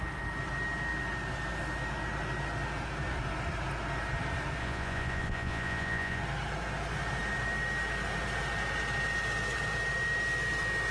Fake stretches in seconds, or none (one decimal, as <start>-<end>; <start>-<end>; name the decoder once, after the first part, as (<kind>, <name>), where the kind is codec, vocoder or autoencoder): 4.6-6.2 (vocoder, Vocos)